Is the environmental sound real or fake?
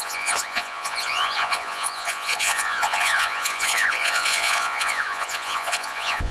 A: fake